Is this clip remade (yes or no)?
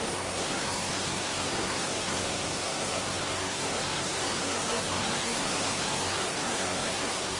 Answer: yes